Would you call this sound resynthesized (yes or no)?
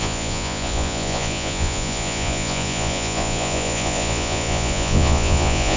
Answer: yes